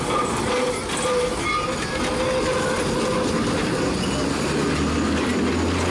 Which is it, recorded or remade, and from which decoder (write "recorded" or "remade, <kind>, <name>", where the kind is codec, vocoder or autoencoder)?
recorded